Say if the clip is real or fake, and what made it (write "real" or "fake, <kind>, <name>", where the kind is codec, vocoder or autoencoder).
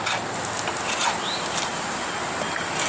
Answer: real